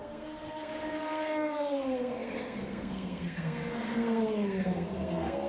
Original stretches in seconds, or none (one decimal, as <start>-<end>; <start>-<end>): none

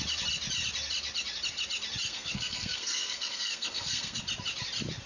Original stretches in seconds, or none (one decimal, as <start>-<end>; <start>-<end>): 0.0-2.1; 4.2-5.1

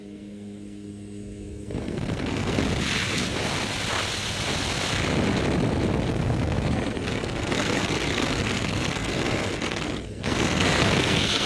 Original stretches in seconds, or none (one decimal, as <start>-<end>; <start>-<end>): 2.6-6.1